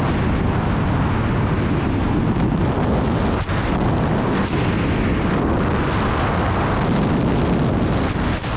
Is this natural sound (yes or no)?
yes